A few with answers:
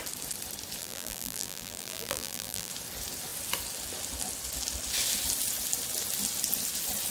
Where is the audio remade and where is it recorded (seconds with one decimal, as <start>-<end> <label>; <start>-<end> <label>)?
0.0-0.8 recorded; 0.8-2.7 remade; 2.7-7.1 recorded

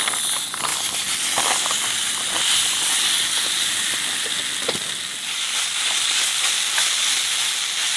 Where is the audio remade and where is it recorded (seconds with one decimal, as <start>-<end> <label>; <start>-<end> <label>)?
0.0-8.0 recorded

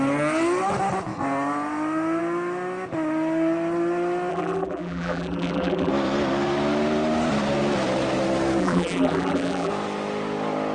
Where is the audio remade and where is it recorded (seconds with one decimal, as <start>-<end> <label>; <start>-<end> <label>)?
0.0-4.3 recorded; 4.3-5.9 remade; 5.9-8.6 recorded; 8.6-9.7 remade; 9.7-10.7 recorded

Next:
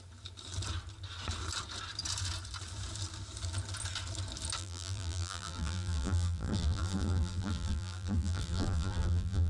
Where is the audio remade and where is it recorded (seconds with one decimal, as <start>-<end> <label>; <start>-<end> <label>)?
0.0-4.6 recorded; 4.6-9.5 remade

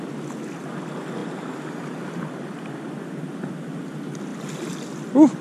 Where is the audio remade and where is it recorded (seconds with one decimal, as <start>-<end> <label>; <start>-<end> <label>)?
0.0-5.4 recorded